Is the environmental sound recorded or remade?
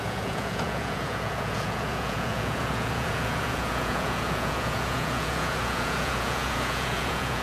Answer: remade